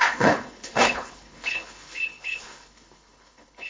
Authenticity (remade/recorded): remade